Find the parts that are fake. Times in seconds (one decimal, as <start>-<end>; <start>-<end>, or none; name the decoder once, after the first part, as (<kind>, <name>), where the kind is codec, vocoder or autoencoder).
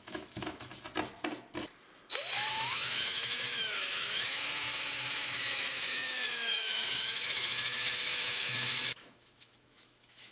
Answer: 0.0-0.7 (autoencoder, DAC-VAE); 2.5-10.3